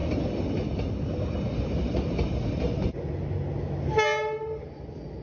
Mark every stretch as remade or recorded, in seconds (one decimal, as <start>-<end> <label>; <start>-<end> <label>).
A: 0.0-5.2 recorded

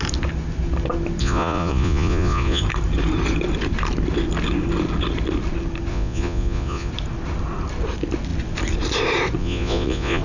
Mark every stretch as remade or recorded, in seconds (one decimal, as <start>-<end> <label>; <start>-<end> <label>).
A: 0.0-1.2 recorded; 1.2-2.6 remade; 2.6-5.9 recorded; 5.9-6.9 remade; 6.9-9.4 recorded; 9.4-10.2 remade

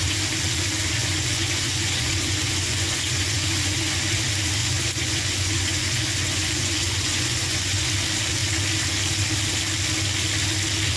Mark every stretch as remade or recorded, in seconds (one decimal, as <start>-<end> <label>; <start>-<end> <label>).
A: 0.0-1.0 recorded; 1.0-4.0 remade; 4.0-4.6 recorded; 4.6-7.9 remade; 7.9-11.0 recorded

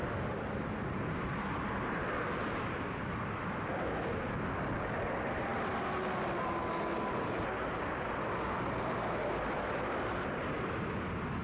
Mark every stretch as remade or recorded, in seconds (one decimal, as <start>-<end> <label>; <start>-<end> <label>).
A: 0.0-11.4 recorded

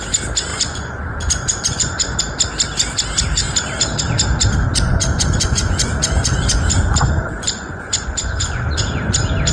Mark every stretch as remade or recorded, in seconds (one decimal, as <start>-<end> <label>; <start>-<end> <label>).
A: 0.0-0.5 recorded; 0.5-2.2 remade; 2.2-4.7 recorded; 4.7-9.0 remade; 9.0-9.5 recorded

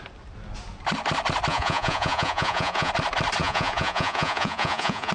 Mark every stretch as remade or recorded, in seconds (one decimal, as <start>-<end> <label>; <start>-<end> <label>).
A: 0.0-1.5 recorded; 1.5-2.9 remade; 2.9-3.4 recorded; 3.4-5.1 remade

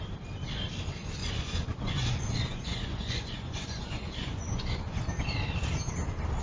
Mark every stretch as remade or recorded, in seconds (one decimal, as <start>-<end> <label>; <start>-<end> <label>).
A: 0.0-1.2 recorded; 1.2-5.0 remade; 5.0-6.4 recorded